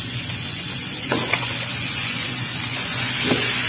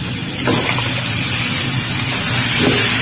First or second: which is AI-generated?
first